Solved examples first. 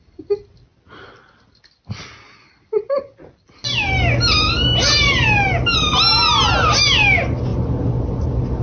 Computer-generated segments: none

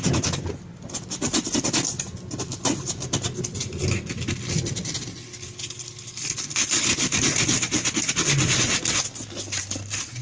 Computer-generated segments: none

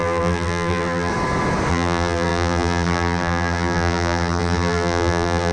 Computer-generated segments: 0.0-1.1 (vocoder, BigVGAN v2); 1.7-5.5

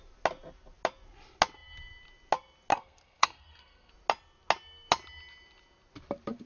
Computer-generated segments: 2.7-3.9 (codec, SNAC)